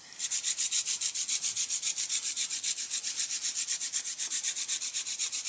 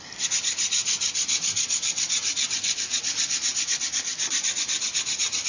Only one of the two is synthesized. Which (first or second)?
first